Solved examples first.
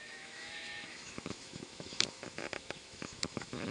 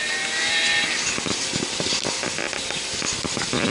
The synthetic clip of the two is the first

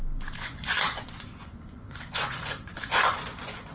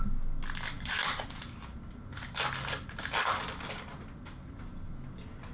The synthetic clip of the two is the first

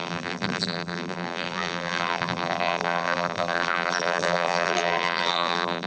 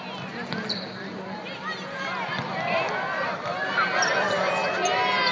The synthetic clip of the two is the first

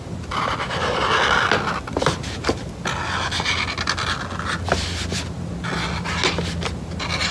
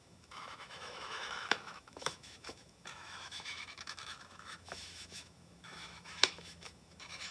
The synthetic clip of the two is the second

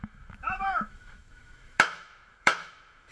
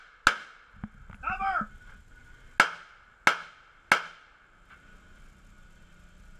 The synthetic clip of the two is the first